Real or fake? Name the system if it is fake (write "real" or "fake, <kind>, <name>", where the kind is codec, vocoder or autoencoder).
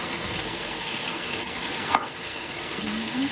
fake, codec, SNAC